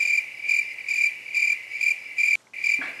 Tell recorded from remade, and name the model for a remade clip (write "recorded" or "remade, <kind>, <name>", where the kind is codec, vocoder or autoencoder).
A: recorded